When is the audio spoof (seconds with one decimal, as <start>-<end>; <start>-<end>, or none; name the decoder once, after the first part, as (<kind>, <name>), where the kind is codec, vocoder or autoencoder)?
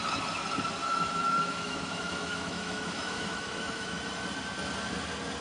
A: 0.8-4.0 (autoencoder, DAC-VAE)